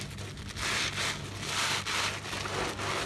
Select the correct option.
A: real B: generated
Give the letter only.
A